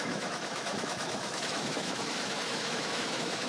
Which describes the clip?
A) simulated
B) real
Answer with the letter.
A